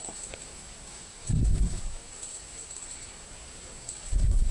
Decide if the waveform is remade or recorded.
remade